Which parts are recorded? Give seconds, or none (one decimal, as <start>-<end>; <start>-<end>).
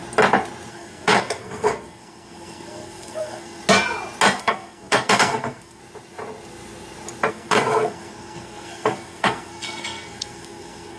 0.0-0.7; 3.6-4.4; 5.8-7.3